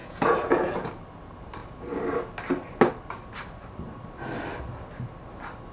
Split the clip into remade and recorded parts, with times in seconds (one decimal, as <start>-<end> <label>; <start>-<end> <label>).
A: 0.0-0.9 remade; 0.9-5.7 recorded